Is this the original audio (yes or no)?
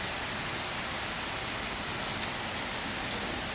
yes